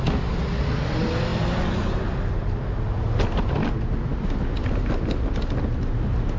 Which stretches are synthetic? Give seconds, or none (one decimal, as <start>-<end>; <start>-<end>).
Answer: none